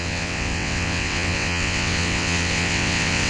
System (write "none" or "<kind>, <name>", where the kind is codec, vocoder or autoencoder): vocoder, WaveNeXt